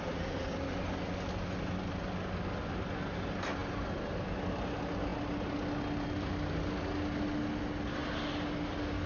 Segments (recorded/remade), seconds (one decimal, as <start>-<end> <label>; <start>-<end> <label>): 0.0-9.1 recorded